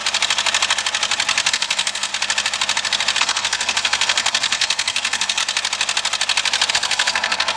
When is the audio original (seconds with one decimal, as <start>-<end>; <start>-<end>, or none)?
0.0-1.5; 2.1-3.2; 5.4-6.7